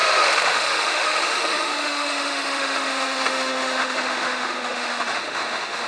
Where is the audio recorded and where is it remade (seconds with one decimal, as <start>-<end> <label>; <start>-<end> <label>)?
0.0-5.9 remade